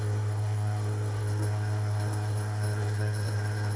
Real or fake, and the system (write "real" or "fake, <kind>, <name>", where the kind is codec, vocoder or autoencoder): fake, codec, SNAC